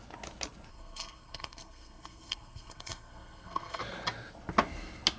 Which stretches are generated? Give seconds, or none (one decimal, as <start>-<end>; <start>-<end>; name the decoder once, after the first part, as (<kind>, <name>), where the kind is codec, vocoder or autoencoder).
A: 0.7-3.8 (codec, SNAC)